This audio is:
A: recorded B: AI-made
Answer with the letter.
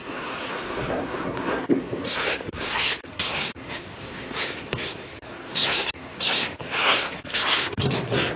B